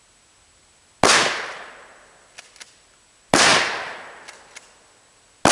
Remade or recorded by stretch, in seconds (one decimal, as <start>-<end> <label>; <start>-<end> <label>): 0.0-5.5 recorded